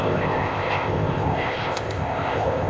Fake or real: fake